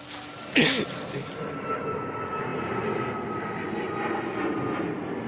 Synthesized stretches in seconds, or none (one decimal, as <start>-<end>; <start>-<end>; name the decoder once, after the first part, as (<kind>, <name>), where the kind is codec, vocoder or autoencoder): none